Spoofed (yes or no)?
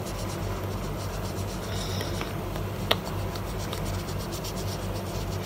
no